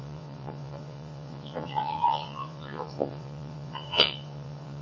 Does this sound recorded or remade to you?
remade